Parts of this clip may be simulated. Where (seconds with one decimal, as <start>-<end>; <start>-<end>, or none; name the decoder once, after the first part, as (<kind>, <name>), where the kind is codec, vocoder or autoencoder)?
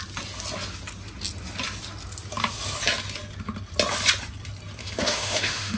4.8-5.8 (autoencoder, DAC-VAE)